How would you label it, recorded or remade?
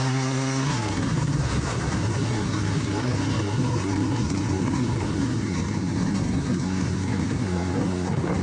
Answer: remade